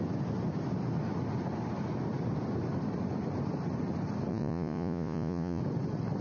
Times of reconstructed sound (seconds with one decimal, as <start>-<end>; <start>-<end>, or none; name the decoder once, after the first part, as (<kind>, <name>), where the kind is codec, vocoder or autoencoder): 4.3-5.6 (vocoder, Vocos)